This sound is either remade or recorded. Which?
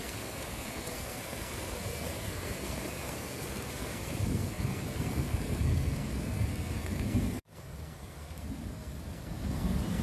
remade